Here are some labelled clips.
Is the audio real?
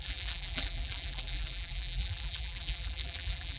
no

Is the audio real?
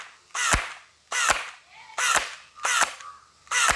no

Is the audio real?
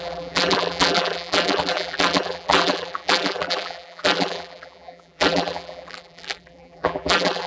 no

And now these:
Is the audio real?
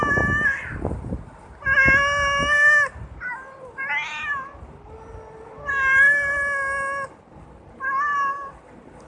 yes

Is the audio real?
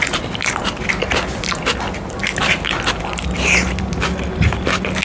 yes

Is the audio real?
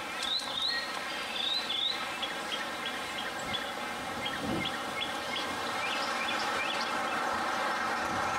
no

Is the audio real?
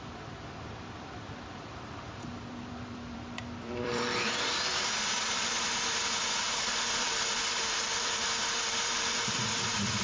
no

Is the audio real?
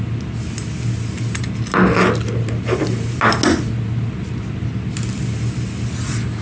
yes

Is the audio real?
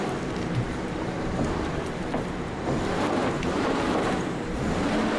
no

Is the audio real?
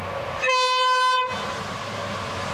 yes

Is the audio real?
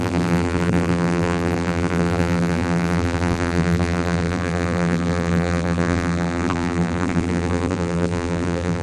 no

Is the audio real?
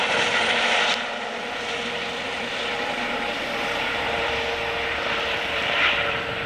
no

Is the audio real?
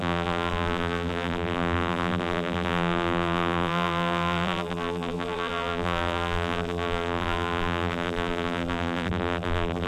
no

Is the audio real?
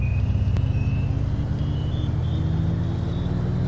yes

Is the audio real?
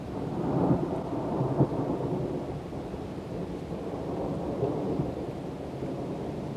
yes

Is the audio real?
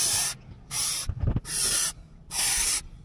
no